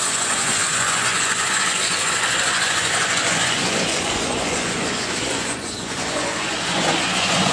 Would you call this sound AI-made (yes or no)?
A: yes